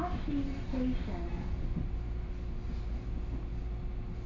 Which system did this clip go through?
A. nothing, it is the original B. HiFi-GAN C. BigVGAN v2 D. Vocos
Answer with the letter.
A